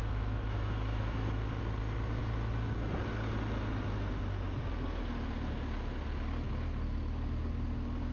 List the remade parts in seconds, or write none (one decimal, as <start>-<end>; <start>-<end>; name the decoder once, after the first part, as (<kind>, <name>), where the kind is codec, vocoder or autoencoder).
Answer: 0.0-1.6 (autoencoder, DAC-VAE)